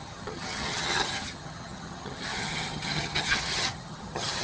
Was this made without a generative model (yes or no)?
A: no